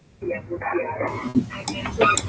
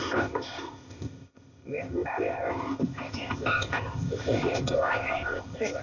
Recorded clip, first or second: first